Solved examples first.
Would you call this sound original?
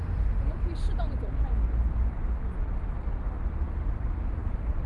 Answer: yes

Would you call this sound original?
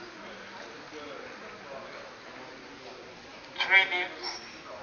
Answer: yes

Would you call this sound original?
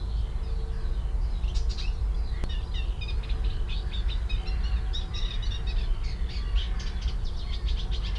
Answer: yes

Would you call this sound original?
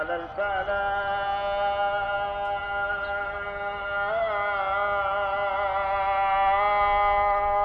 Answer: yes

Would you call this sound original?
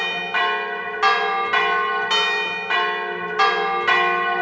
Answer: yes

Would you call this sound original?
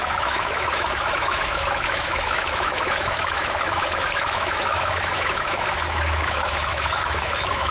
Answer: no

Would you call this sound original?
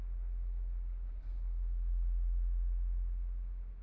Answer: yes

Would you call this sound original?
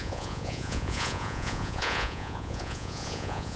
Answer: no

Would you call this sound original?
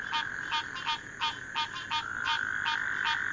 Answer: yes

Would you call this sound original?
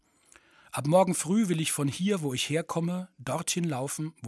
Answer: yes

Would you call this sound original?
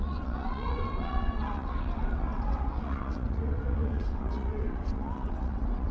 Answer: no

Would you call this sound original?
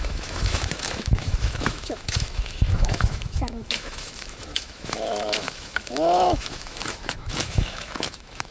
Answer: no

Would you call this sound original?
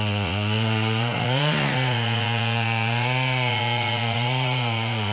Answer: no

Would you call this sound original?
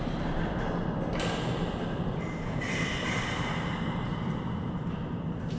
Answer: no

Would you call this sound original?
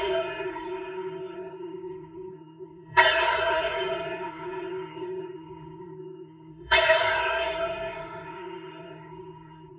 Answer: no